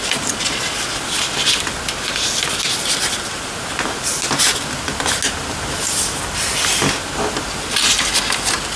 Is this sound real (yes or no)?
yes